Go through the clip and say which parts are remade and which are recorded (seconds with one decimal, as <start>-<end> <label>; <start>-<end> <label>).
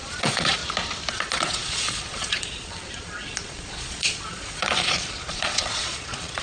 0.0-0.6 remade; 0.6-1.1 recorded; 1.1-6.4 remade